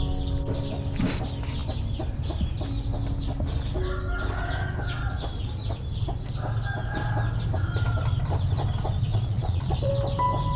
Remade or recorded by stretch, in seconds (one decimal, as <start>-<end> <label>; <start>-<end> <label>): 0.0-9.1 recorded; 9.1-9.9 remade; 9.9-10.6 recorded